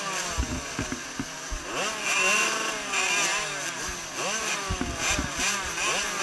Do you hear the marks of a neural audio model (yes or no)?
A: no